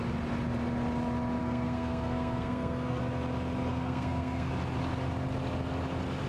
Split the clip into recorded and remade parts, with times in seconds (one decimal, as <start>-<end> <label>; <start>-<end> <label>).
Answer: 0.0-1.4 recorded; 1.4-3.0 remade; 3.0-3.7 recorded; 3.7-4.5 remade; 4.5-6.3 recorded